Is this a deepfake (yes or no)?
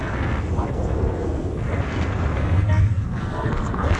yes